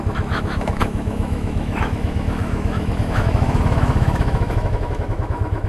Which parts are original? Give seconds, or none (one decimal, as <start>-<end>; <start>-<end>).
none